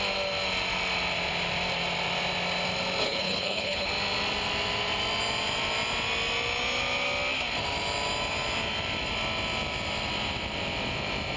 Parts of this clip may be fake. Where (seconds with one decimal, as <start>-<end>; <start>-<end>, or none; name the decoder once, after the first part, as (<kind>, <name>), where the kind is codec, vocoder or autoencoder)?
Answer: 3.0-3.9 (codec, HILCodec)